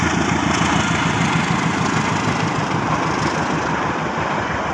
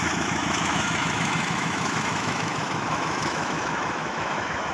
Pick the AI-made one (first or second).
second